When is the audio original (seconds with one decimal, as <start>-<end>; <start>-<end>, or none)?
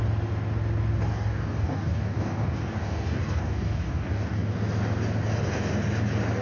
0.0-1.1; 4.5-6.4